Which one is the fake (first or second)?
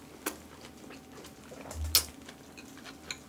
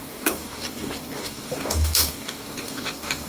second